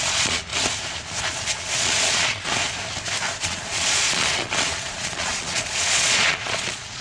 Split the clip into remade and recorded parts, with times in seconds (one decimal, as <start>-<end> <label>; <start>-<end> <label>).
0.0-0.5 remade; 0.5-1.2 recorded; 1.2-2.5 remade; 2.5-3.4 recorded; 3.4-7.0 remade